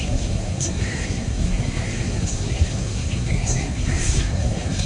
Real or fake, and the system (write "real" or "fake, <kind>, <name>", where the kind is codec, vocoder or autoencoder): fake, codec, SNAC